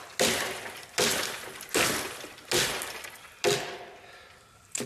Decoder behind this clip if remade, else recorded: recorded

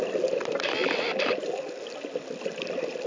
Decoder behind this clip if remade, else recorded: recorded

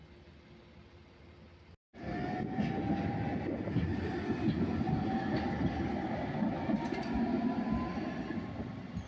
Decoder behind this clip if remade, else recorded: recorded